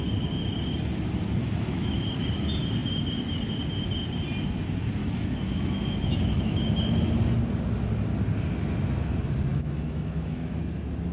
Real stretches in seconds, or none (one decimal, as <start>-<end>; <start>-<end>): 0.0-1.4; 2.0-5.0; 6.6-9.5; 10.6-11.1